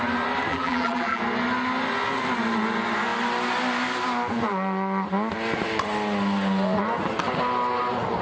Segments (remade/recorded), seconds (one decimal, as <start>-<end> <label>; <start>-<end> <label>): 0.0-0.5 recorded; 0.5-1.2 remade; 1.2-8.2 recorded